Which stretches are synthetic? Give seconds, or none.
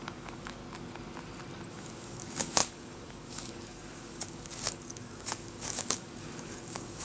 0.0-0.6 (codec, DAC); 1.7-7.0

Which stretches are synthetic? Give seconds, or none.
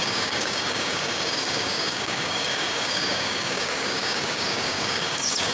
0.0-5.5 (codec, DAC)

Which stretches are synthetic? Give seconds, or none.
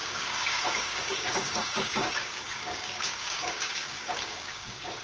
0.0-5.0 (codec, DAC)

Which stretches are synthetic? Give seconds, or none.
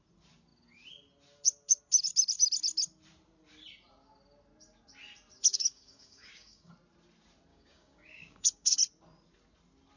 5.5-6.7 (codec, DAC); 7.5-8.8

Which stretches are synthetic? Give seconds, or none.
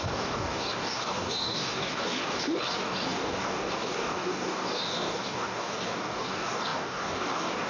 0.0-7.7 (codec, DAC)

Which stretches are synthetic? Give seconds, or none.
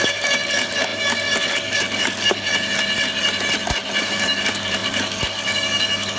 0.0-2.5 (codec, DAC); 4.0-6.2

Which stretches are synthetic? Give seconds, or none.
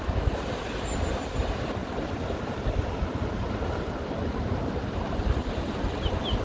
none